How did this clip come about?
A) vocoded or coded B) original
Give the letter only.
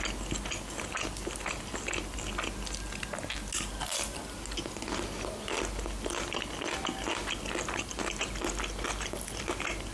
B